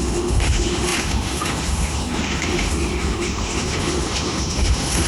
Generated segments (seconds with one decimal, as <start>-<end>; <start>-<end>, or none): 0.0-5.1